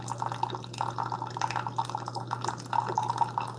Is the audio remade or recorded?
recorded